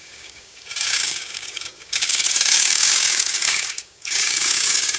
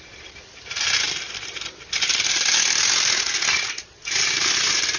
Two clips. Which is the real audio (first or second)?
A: second